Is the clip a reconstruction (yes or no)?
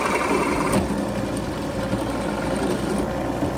no